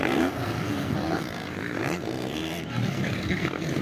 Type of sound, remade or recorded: remade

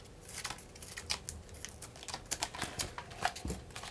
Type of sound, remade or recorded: recorded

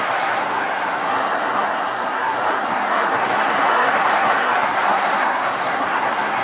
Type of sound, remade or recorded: remade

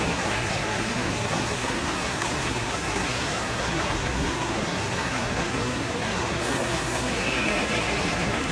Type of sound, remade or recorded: remade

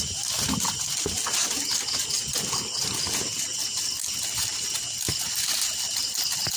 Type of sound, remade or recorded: recorded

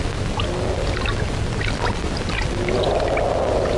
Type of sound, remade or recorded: recorded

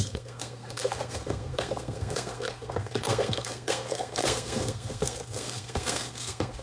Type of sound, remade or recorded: remade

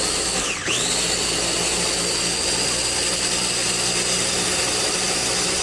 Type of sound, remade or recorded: recorded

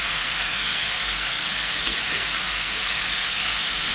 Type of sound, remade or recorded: remade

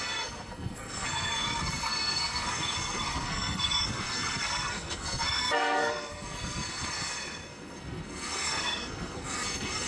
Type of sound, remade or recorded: remade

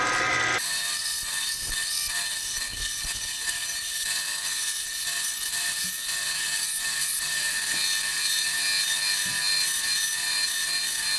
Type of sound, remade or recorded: recorded